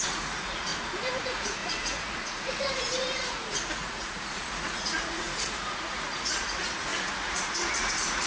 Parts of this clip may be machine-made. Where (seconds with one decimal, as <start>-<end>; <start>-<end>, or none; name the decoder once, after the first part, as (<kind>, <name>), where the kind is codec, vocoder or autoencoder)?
0.0-0.7 (vocoder, Vocos); 1.2-8.3